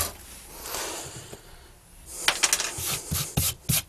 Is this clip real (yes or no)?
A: yes